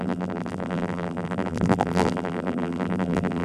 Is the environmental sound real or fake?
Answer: fake